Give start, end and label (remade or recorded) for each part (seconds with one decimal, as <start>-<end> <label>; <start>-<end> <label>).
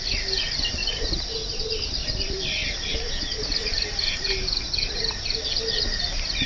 0.0-0.8 recorded; 0.8-1.3 remade; 1.3-2.0 recorded; 2.0-4.3 remade; 4.3-6.5 recorded